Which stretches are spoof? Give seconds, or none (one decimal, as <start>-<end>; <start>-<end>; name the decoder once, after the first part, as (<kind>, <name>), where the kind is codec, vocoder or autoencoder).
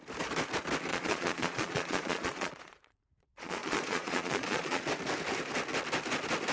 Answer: 0.9-4.8 (vocoder, Vocos)